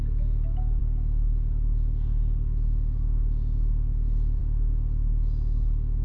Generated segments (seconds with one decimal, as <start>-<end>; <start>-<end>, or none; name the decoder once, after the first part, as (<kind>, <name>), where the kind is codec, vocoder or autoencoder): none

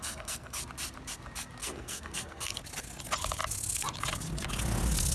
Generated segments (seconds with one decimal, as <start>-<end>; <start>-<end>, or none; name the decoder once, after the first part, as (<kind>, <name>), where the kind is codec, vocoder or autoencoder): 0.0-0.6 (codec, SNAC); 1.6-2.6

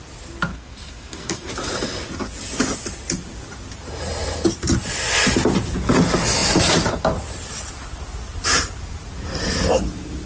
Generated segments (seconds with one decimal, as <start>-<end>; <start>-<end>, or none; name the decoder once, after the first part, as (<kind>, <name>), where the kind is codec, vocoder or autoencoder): 0.5-1.5 (codec, SNAC)

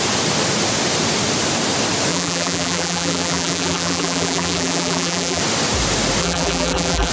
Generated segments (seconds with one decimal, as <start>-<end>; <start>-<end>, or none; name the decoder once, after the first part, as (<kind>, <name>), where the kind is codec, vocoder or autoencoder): 2.1-5.4 (vocoder, BigVGAN v2); 6.2-7.1